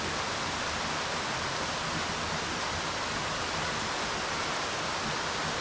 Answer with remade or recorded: recorded